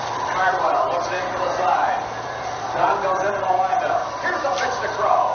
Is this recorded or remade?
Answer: remade